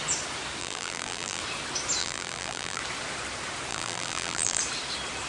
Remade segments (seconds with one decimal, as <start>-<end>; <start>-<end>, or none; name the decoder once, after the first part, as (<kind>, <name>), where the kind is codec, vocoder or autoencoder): 0.6-1.4 (vocoder, BigVGAN v2); 2.0-2.8; 3.7-4.6